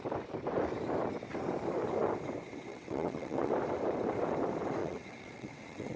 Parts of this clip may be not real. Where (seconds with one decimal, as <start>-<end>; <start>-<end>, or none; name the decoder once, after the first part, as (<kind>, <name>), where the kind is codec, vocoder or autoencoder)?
2.7-3.5 (vocoder, WaveNeXt); 4.8-6.0